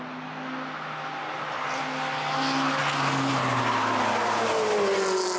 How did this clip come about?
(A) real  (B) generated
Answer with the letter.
A